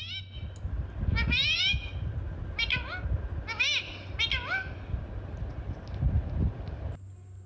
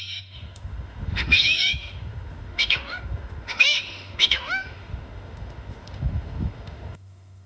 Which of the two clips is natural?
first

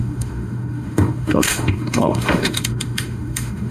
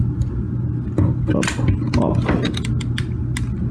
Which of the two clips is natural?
second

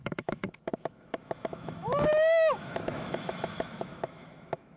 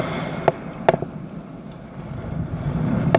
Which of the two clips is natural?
second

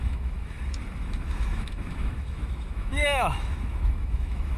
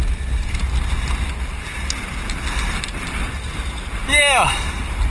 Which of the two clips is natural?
second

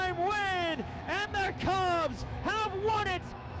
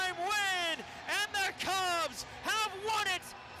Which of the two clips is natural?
second